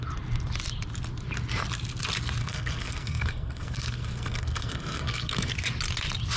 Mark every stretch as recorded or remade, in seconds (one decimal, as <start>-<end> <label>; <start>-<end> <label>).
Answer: 0.0-2.4 recorded; 2.4-5.5 remade; 5.5-6.4 recorded